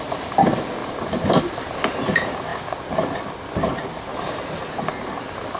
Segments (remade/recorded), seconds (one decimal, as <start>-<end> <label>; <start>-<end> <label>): 0.0-0.8 recorded; 0.8-1.4 remade; 1.4-4.1 recorded; 4.1-4.6 remade; 4.6-5.6 recorded